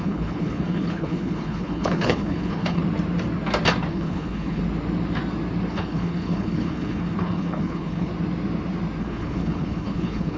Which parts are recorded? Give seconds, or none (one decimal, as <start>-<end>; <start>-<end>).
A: 2.8-3.9; 4.6-5.7; 8.1-9.0